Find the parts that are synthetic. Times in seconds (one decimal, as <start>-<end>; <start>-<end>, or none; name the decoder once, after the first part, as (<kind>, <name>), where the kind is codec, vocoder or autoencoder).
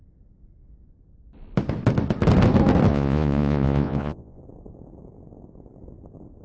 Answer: 2.9-4.4 (vocoder, Vocos)